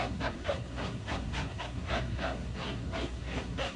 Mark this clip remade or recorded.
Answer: remade